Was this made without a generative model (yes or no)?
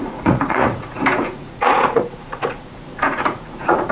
no